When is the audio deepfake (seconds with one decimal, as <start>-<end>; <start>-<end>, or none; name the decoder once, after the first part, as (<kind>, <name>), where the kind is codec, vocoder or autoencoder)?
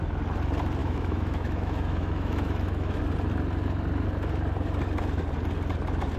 0.8-3.0 (autoencoder, DAC-VAE)